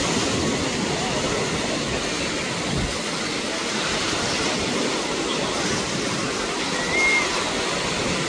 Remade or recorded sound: recorded